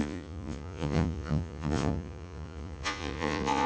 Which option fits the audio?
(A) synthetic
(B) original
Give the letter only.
A